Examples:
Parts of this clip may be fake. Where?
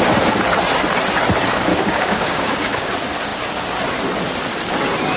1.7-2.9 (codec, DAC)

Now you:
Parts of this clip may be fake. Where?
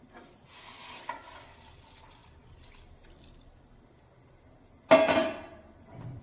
none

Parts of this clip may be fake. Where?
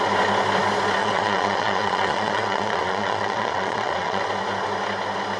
1.0-4.2 (vocoder, Vocos)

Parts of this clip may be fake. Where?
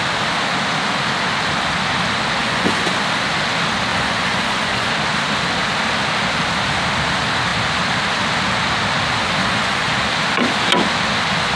2.4-2.9 (vocoder, Vocos); 3.9-4.9; 9.4-9.9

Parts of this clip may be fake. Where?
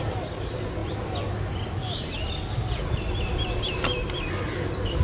none